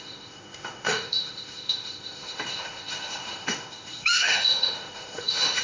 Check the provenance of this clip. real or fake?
fake